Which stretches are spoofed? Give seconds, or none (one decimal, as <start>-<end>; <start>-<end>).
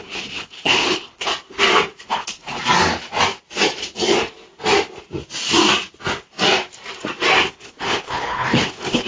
0.0-1.3; 2.0-2.5; 7.5-9.1